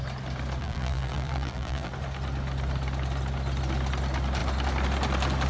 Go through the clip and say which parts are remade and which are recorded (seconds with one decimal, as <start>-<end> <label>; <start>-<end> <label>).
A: 0.0-0.6 recorded; 0.6-1.9 remade; 1.9-5.5 recorded